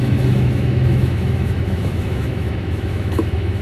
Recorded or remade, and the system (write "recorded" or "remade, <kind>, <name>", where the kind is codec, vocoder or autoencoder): remade, autoencoder, DAC-VAE